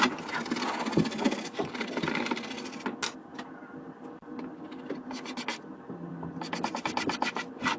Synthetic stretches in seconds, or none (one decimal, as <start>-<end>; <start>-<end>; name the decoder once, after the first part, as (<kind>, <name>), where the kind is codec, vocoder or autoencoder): none